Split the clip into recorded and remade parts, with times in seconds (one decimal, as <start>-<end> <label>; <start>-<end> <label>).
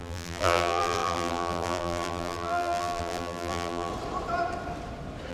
0.0-3.9 remade; 3.9-5.3 recorded